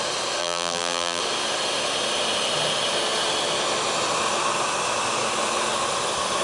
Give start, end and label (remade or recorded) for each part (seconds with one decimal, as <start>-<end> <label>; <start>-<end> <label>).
0.0-0.4 recorded; 0.4-1.2 remade; 1.2-6.4 recorded